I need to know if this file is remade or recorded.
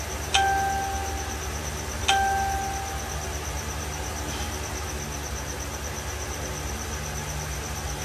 recorded